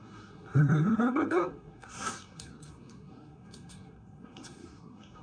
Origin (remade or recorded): remade